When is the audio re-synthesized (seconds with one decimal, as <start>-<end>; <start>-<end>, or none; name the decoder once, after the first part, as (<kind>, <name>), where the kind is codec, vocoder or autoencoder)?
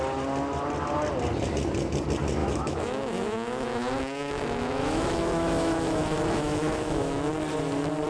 2.4-7.3 (autoencoder, DAC-VAE)